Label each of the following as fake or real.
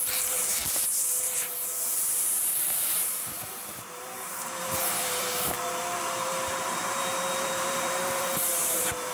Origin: fake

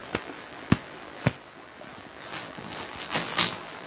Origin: fake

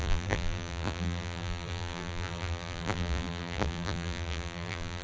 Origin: fake